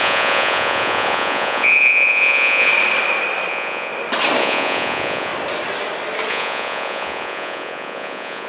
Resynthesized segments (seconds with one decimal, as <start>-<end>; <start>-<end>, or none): 0.0-2.7; 3.5-3.9; 4.4-5.3; 6.3-8.5